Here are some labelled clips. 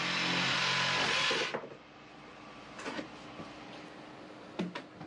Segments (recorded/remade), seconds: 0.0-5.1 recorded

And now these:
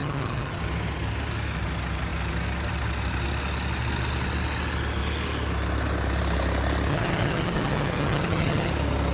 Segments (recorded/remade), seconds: 0.0-0.6 remade; 0.6-6.9 recorded; 6.9-8.7 remade; 8.7-9.1 recorded

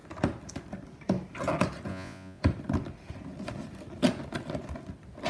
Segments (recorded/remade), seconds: 0.0-1.9 recorded; 1.9-2.4 remade; 2.4-5.3 recorded

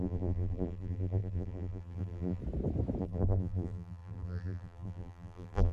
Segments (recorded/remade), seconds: 0.0-2.4 remade; 2.4-3.0 recorded; 3.0-5.7 remade

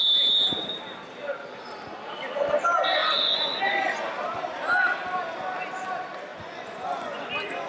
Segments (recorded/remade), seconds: 0.0-3.0 recorded; 3.0-3.6 remade; 3.6-6.3 recorded; 6.3-7.3 remade; 7.3-7.7 recorded